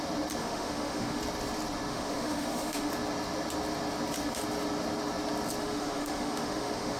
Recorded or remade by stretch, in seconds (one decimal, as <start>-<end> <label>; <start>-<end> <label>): 0.0-0.4 recorded; 0.4-1.2 remade; 1.2-1.9 recorded; 1.9-2.9 remade; 2.9-5.6 recorded; 5.6-7.0 remade